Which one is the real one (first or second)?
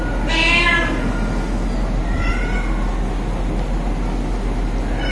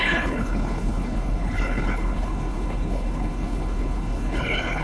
first